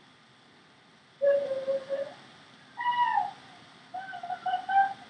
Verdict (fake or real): real